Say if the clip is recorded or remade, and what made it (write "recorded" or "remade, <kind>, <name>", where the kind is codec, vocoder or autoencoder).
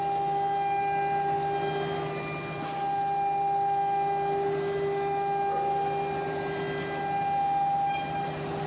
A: recorded